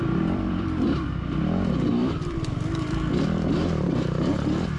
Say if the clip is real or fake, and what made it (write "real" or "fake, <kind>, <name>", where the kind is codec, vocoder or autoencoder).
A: fake, vocoder, BigVGAN v2